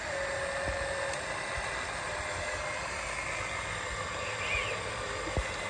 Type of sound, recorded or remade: recorded